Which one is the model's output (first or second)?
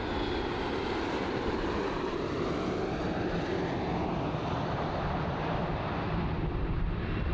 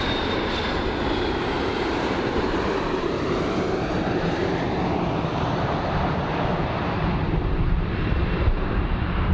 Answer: second